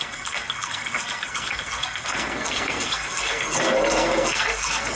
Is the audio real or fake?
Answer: fake